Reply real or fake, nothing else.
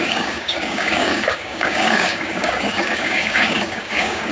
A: fake